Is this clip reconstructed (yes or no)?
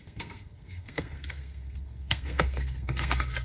yes